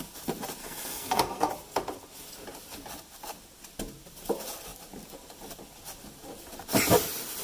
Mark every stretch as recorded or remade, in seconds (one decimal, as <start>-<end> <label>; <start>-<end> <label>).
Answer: 0.0-0.6 recorded; 0.6-1.5 remade; 1.5-7.4 recorded